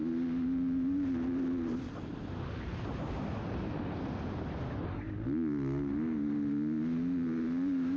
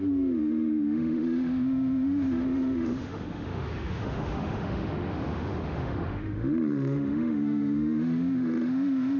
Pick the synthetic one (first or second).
second